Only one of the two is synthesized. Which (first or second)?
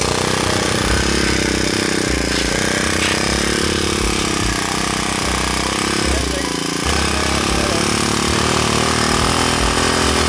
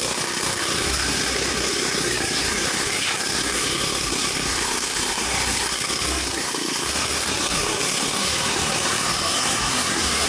second